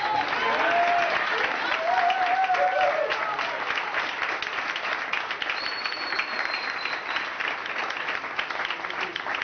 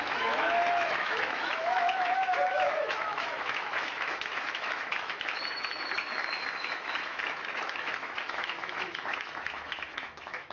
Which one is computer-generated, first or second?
second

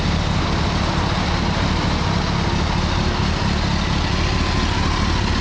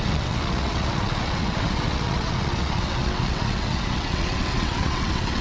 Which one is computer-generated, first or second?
second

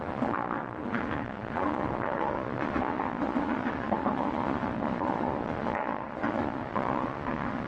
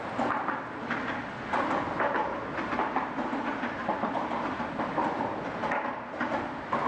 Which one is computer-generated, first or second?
first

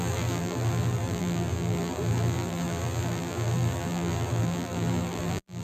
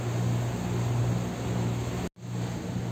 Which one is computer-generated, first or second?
first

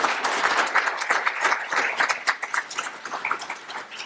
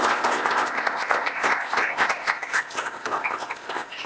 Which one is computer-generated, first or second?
second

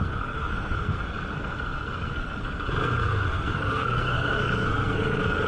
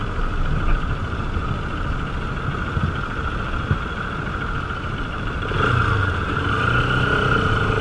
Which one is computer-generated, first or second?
first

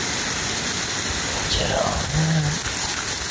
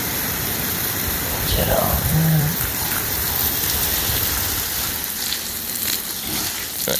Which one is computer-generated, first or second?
second